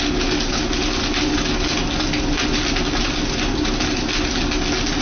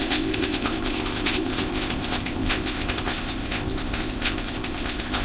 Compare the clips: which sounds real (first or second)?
first